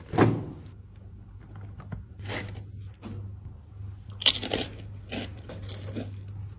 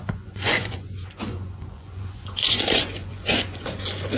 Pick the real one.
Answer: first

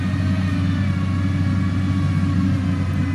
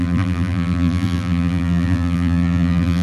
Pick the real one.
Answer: first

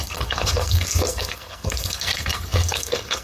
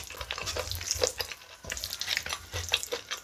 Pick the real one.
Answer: second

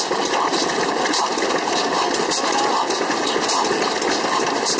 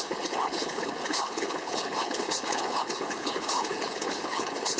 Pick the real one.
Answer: first